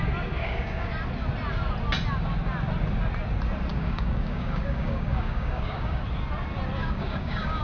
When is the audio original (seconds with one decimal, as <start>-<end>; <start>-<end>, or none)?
0.0-0.4; 0.9-3.7; 6.0-6.8